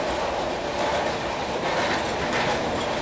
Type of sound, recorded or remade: recorded